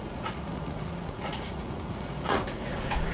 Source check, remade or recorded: remade